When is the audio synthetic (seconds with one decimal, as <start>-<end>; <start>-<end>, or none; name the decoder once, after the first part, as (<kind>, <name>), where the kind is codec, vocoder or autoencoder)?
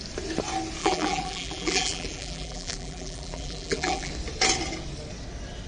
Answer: 0.8-4.1 (vocoder, BigVGAN v2)